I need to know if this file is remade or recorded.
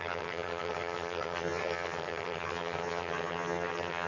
remade